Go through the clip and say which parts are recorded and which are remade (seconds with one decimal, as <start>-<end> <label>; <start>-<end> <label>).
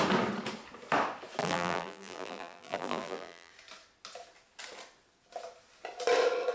0.0-1.4 recorded; 1.4-3.5 remade; 3.5-6.5 recorded